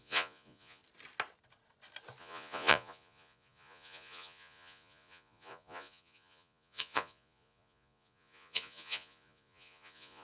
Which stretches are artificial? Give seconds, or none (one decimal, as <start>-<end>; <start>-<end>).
0.0-0.8; 2.2-10.2